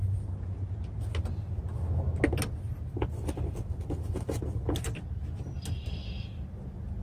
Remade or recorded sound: recorded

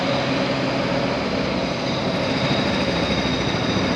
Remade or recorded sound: recorded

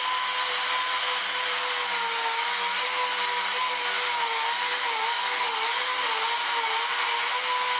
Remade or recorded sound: recorded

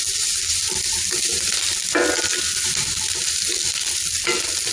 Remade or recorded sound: recorded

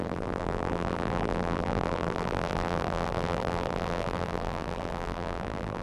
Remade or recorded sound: remade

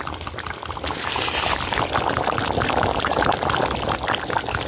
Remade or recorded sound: remade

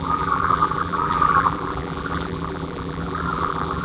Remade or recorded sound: remade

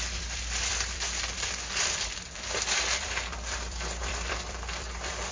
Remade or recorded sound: remade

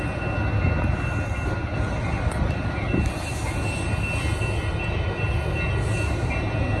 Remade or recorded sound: recorded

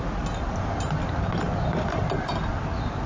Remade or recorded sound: recorded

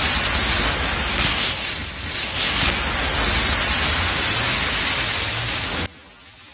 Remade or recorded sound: recorded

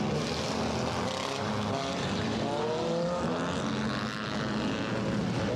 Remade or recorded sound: recorded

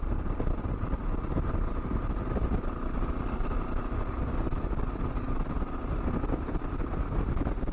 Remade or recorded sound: remade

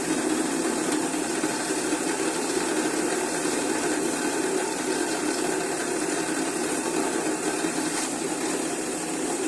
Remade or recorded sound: remade